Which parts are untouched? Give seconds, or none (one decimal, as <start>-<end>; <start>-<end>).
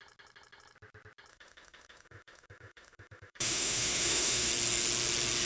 0.0-1.3; 4.5-5.5